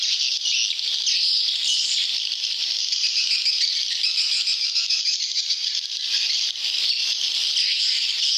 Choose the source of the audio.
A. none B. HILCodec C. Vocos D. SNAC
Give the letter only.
A